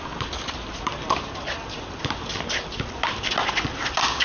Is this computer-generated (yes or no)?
no